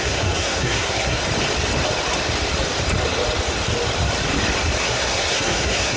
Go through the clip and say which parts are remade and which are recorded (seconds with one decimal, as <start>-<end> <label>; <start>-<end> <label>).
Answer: 0.0-1.2 remade; 1.2-4.8 recorded; 4.8-6.0 remade